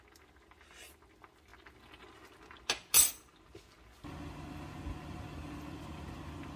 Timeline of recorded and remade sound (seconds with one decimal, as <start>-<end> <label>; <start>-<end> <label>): 0.0-6.6 recorded